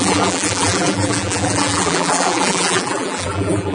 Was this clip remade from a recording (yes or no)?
yes